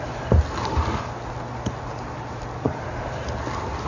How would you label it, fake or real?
real